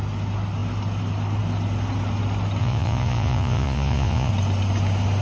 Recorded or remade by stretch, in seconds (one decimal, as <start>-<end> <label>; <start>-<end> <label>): 0.0-2.6 recorded; 2.6-4.3 remade; 4.3-5.2 recorded